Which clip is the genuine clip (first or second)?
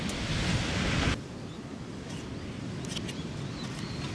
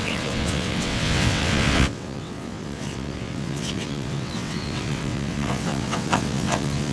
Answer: first